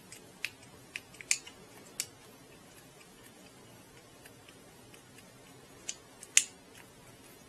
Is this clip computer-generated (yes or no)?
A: no